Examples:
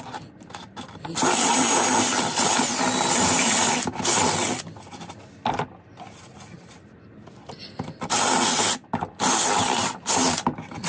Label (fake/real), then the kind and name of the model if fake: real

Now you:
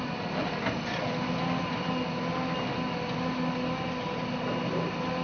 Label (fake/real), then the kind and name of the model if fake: real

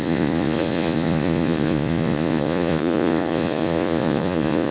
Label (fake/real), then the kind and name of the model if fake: fake, vocoder, Vocos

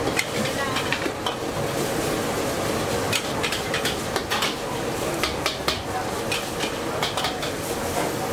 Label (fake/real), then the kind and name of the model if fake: real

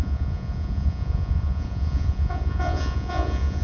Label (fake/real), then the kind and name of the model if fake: fake, vocoder, Vocos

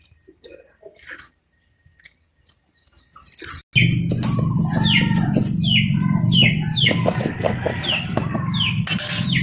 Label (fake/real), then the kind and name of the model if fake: real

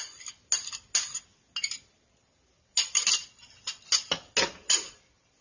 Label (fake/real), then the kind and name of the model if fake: real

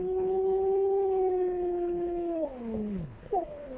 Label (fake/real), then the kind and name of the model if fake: fake, codec, HILCodec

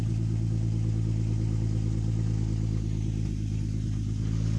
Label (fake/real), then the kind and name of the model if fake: real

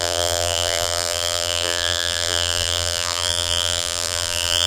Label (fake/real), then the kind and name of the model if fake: fake, vocoder, BigVGAN v2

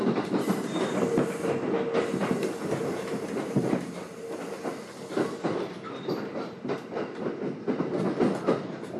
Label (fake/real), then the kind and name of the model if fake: real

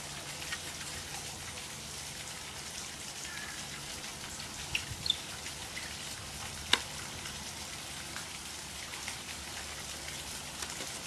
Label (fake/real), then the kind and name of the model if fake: real